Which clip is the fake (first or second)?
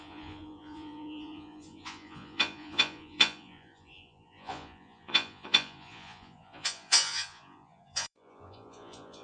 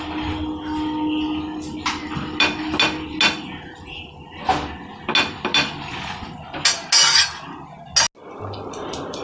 first